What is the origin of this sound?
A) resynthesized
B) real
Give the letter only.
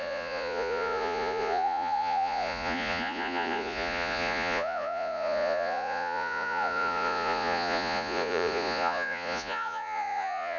A